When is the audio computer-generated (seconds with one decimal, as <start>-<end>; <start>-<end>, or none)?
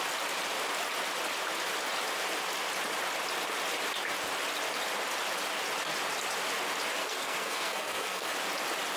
7.0-8.3